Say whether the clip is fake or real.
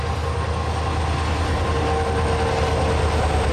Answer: real